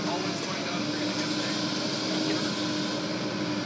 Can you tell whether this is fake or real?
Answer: real